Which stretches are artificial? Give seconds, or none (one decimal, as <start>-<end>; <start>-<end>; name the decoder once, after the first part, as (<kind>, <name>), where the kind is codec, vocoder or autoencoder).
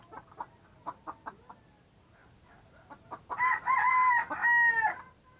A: none